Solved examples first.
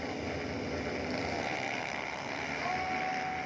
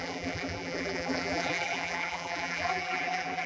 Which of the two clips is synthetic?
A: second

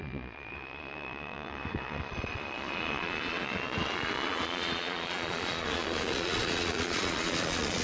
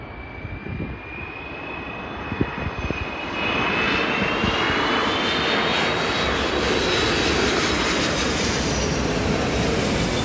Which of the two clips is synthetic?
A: first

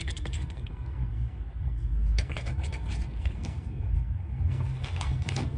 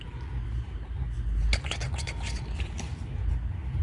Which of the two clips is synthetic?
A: first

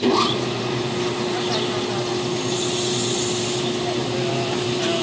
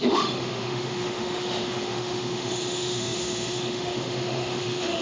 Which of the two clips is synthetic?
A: second